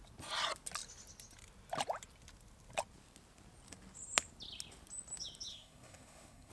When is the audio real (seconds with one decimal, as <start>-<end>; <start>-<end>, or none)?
0.0-5.5